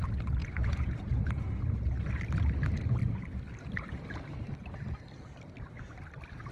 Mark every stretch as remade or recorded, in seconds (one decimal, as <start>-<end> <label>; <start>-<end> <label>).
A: 0.0-0.4 recorded; 0.4-1.6 remade; 1.6-6.5 recorded